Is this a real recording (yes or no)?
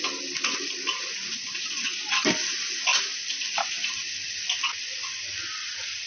yes